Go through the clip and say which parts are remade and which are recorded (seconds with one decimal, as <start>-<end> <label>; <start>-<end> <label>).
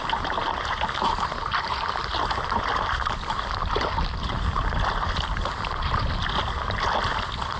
0.0-7.6 recorded